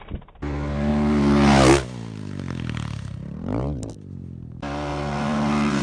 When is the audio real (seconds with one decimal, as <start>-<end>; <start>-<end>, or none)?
0.0-4.9